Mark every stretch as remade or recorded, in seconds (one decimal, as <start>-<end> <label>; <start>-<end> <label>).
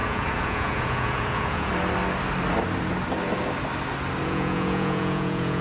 0.0-1.7 remade; 1.7-4.2 recorded; 4.2-5.6 remade